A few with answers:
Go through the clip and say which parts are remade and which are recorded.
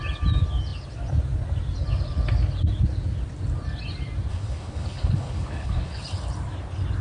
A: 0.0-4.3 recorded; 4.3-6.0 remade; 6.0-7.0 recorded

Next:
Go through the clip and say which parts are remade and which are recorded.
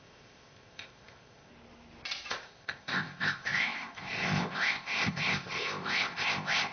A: 0.0-1.5 remade; 1.5-2.3 recorded; 2.3-6.7 remade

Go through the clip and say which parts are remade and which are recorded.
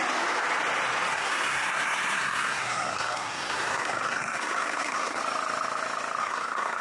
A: 0.0-1.1 recorded; 1.1-5.2 remade; 5.2-6.2 recorded; 6.2-6.8 remade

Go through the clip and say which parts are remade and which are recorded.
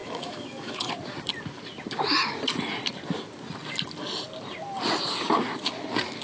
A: 0.0-0.9 remade; 0.9-6.2 recorded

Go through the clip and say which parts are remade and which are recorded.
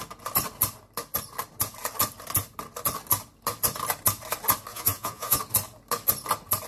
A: 0.0-4.7 recorded; 4.7-5.4 remade; 5.4-6.7 recorded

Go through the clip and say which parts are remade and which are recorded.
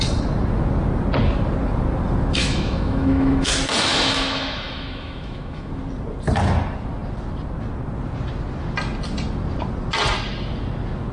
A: 0.0-2.4 recorded; 2.4-3.5 remade; 3.5-3.9 recorded; 3.9-5.7 remade; 5.7-11.1 recorded